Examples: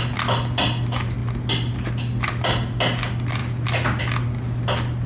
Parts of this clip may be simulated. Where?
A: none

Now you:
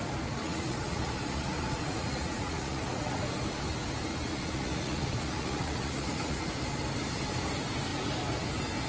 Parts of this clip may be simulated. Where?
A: 0.4-3.2; 4.1-6.5

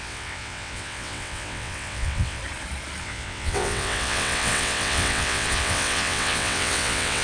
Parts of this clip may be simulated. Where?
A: 0.0-2.4; 3.0-7.2